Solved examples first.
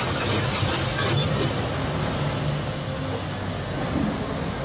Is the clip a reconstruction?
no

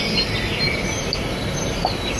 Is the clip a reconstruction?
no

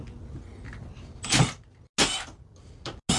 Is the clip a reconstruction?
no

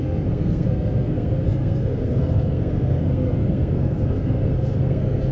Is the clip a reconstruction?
yes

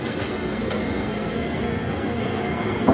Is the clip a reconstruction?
yes